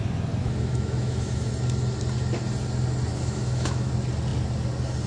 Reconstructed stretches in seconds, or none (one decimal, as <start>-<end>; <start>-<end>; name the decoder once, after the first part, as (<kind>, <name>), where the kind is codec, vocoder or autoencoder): 0.4-1.5 (autoencoder, DAC-VAE); 3.1-3.9